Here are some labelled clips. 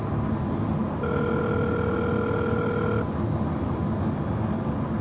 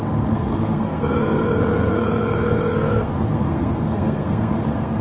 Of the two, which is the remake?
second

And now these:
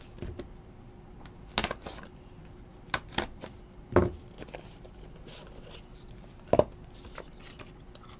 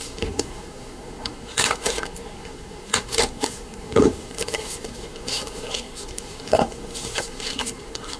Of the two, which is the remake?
second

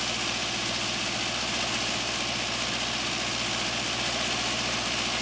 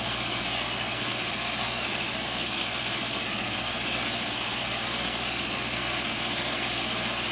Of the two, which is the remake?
second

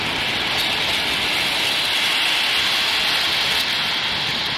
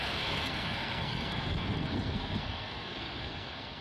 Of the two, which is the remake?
second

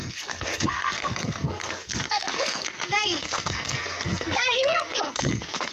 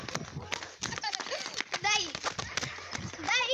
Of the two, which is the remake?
first